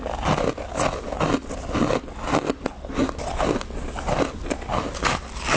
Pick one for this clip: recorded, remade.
recorded